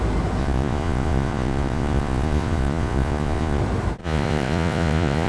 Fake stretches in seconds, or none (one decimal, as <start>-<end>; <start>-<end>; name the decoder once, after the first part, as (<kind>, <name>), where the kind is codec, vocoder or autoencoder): 0.4-3.6 (vocoder, Vocos); 4.0-5.3